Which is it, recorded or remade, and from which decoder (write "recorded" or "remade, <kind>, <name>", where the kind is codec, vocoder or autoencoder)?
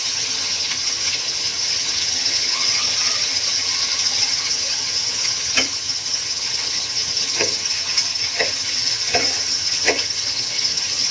remade, vocoder, HiFi-GAN